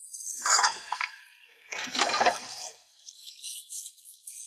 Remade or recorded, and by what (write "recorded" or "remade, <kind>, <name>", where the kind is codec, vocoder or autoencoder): remade, codec, SNAC